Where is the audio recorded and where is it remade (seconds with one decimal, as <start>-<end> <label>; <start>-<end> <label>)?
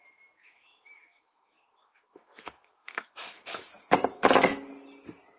0.0-0.4 recorded; 0.4-3.6 remade; 3.6-4.1 recorded; 4.1-4.7 remade; 4.7-5.4 recorded